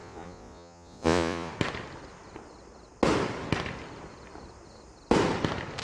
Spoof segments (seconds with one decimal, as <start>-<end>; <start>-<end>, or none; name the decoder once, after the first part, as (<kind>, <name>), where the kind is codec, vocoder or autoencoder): 0.0-1.5 (vocoder, Vocos)